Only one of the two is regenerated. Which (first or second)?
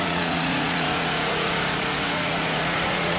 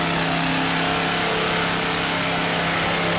first